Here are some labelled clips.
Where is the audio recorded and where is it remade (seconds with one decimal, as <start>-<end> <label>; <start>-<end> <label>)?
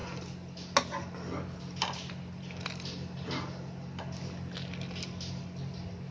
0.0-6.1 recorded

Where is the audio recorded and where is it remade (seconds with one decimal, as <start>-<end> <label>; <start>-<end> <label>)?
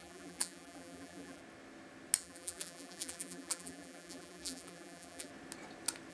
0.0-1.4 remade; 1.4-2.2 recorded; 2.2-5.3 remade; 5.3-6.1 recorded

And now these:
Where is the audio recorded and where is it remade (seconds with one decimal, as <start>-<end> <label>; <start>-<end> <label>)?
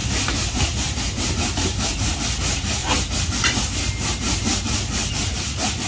0.0-2.8 remade; 2.8-5.1 recorded; 5.1-5.9 remade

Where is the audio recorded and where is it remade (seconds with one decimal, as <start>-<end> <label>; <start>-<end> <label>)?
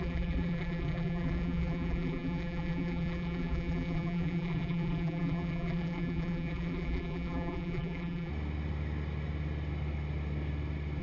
0.0-8.3 remade; 8.3-11.0 recorded